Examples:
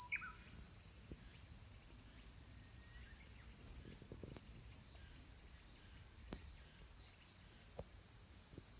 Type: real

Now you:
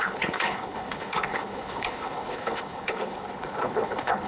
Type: fake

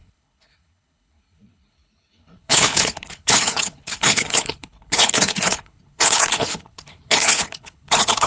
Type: fake